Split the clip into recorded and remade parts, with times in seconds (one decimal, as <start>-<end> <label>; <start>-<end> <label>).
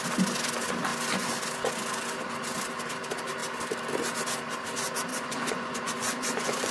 0.0-5.1 recorded; 5.1-6.7 remade